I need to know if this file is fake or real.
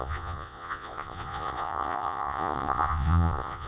fake